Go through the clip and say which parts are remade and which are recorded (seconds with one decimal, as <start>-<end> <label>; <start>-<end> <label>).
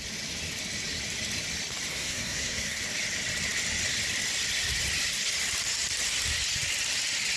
0.0-1.9 recorded; 1.9-2.8 remade; 2.8-7.4 recorded